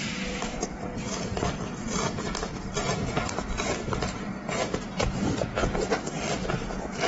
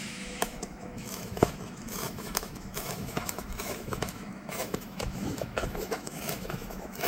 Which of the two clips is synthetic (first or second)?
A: second